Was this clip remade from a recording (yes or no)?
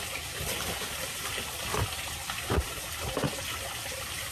no